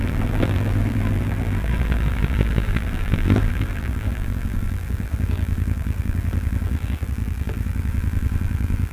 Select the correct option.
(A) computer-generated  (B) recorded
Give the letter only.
A